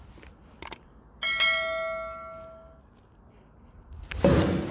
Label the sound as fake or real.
real